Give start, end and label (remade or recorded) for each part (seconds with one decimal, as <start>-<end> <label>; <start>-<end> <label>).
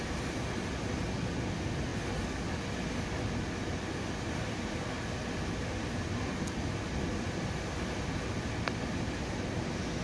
0.0-10.0 recorded